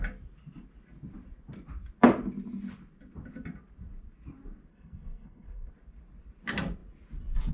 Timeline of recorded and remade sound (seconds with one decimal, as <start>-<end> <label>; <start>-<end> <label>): 0.0-4.7 recorded; 4.7-5.7 remade; 5.7-7.5 recorded